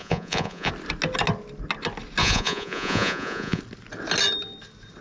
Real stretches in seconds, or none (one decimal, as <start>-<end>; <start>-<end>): 0.7-2.2; 3.6-5.0